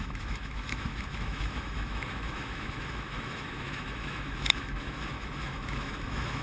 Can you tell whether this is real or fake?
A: fake